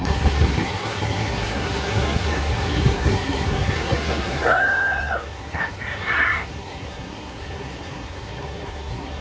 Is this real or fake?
fake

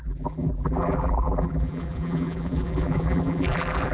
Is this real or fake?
fake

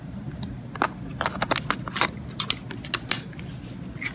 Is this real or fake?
real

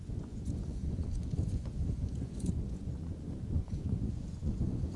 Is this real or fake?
fake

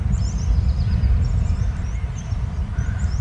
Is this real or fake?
fake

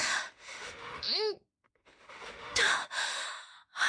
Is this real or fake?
fake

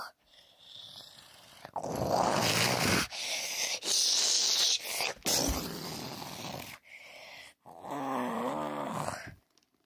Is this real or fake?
real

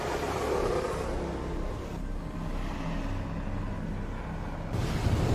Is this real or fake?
real